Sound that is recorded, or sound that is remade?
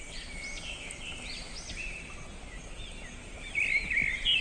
recorded